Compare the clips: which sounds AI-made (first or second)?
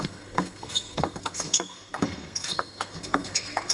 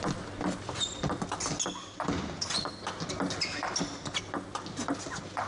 first